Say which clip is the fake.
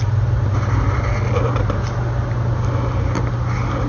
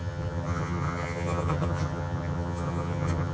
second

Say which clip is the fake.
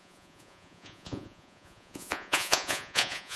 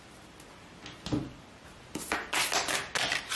first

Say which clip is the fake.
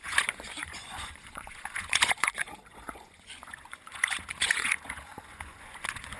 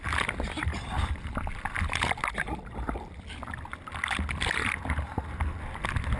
first